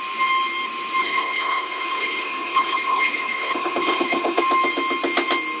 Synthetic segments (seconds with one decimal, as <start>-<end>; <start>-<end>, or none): 1.0-4.4